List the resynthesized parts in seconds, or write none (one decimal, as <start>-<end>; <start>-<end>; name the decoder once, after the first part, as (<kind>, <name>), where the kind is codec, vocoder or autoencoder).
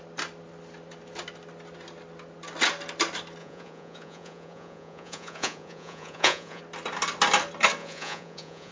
3.4-6.6 (vocoder, Vocos); 7.8-8.7